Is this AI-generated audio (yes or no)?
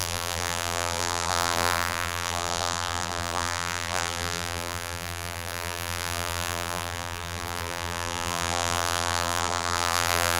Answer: yes